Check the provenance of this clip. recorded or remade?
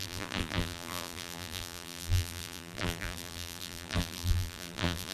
remade